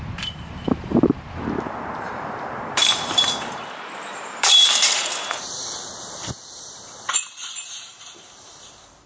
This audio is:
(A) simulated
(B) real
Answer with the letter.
A